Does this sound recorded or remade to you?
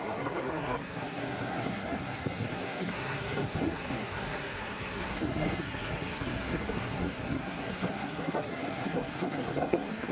remade